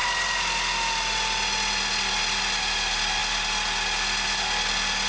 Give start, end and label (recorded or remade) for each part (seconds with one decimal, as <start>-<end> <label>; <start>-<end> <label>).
0.0-5.1 recorded